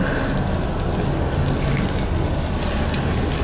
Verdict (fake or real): real